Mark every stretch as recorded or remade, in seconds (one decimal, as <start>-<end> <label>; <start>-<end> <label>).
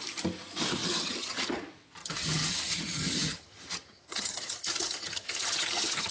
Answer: 0.0-0.8 recorded; 0.8-1.6 remade; 1.6-2.0 recorded; 2.0-6.1 remade